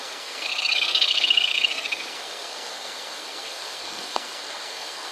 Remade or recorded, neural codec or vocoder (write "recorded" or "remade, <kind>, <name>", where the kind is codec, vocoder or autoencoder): remade, codec, SNAC